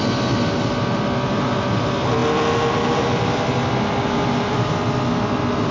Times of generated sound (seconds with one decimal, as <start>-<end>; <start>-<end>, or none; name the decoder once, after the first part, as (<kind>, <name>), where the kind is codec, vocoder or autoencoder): none